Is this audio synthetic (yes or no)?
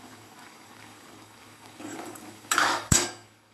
yes